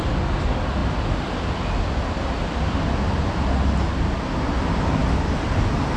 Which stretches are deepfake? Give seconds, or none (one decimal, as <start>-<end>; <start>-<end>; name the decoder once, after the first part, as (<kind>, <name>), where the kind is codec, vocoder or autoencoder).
none